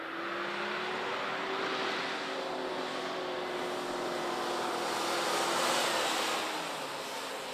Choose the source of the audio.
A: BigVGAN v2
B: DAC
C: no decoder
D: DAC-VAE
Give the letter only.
C